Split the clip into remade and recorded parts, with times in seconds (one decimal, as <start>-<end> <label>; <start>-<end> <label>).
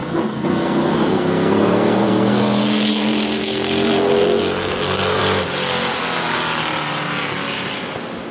0.0-5.2 remade; 5.2-8.3 recorded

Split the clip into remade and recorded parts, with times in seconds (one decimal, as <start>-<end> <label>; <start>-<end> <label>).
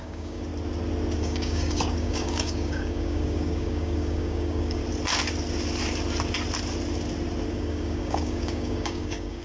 0.0-0.5 remade; 0.5-1.2 recorded; 1.2-4.8 remade; 4.8-7.5 recorded; 7.5-9.4 remade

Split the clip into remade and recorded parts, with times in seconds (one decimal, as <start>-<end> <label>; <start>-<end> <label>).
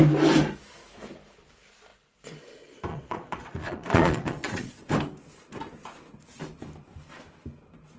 0.0-2.9 recorded; 2.9-4.7 remade; 4.7-8.0 recorded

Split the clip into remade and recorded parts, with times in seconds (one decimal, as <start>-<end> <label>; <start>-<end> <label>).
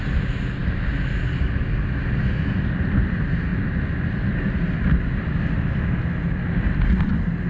0.0-7.5 recorded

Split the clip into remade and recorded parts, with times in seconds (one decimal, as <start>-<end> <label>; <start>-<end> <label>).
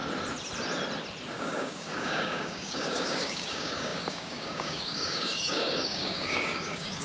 0.0-1.3 recorded; 1.3-7.0 remade